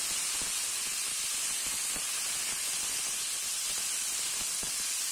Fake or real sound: real